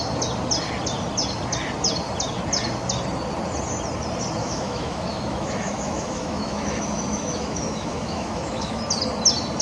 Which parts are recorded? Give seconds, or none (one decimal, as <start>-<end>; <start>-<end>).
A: 0.0-4.4; 8.8-9.6